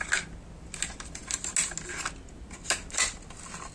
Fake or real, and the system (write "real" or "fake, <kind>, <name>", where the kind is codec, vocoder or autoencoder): real